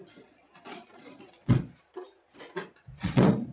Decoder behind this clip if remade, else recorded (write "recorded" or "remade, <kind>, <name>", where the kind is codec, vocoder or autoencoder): remade, vocoder, Vocos